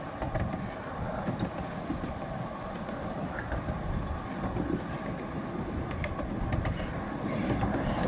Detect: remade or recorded recorded